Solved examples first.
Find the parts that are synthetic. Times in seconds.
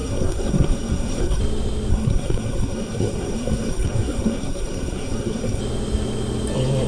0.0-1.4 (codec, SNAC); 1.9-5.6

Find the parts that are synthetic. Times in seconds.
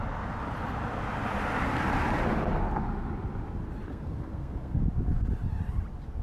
3.9-4.8 (codec, SNAC)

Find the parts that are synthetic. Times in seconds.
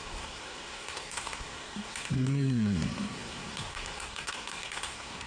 0.0-5.3 (codec, SNAC)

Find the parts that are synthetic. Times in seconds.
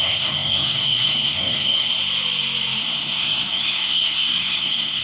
0.0-2.0 (codec, SNAC); 2.8-5.0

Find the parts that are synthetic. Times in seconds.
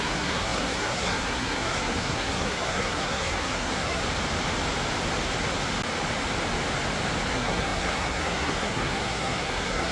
0.0-4.0 (codec, SNAC); 7.3-9.9